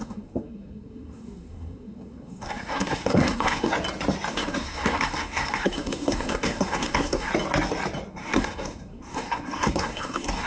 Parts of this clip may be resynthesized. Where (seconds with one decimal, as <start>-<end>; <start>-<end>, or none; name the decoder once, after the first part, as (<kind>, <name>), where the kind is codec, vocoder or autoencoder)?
0.0-3.7 (codec, SNAC); 4.3-7.3; 8.1-10.5